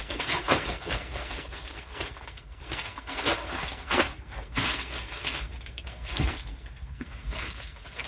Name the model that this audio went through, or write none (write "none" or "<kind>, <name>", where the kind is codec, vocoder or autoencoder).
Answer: codec, SNAC